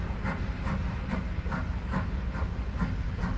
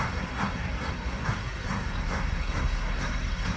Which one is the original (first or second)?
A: first